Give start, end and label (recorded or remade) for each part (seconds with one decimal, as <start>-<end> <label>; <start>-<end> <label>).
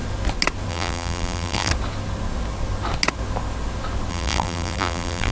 0.0-0.7 recorded; 0.7-1.7 remade; 1.7-4.1 recorded; 4.1-5.3 remade